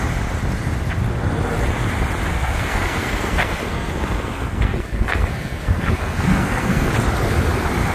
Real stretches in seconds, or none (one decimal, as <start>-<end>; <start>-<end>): 0.0-2.3; 6.9-7.9